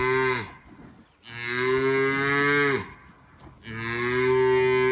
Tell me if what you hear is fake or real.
real